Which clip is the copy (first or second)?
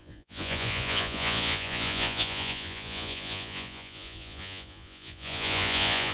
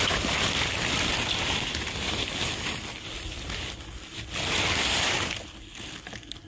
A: first